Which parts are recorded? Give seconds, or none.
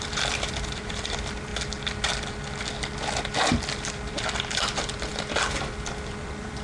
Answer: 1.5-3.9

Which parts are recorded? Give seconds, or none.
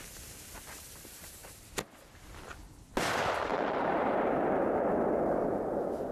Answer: 0.0-3.5; 4.2-6.1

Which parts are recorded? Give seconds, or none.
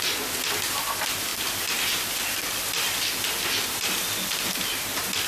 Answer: 0.0-1.3; 4.5-5.3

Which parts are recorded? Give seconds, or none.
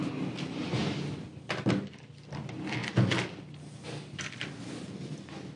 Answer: 0.0-5.6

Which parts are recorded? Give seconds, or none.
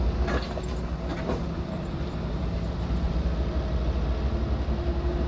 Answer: 0.0-1.1; 3.3-5.3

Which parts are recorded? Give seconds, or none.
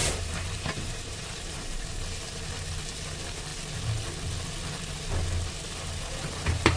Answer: 2.0-6.8